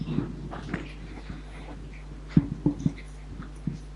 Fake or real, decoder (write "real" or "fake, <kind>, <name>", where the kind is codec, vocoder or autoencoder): real